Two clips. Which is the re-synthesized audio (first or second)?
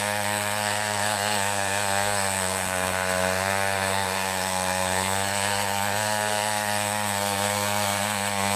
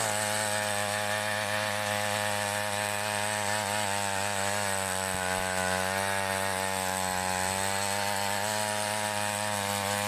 first